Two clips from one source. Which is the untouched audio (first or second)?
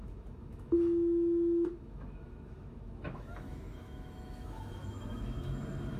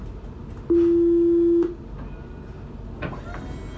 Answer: second